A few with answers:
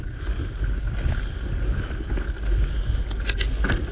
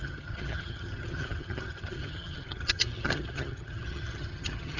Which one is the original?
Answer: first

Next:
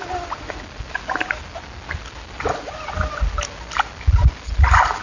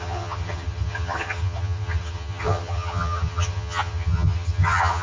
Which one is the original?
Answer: first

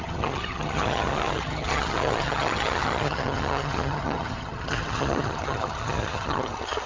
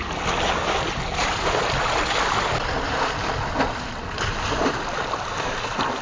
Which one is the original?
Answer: second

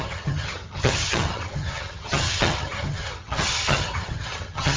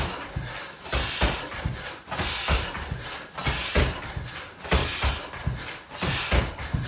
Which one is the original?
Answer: second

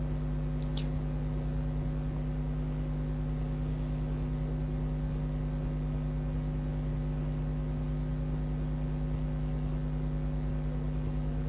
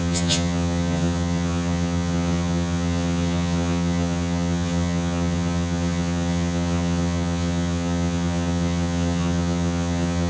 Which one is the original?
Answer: first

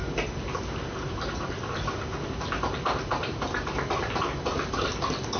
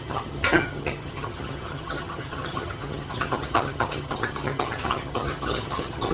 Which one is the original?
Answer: first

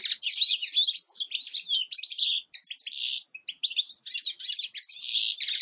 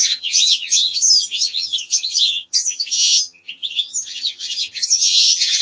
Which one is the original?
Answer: first